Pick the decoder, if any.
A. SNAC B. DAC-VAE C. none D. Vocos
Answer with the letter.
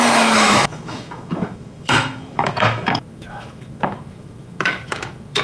B